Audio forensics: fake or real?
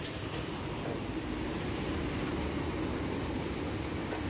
real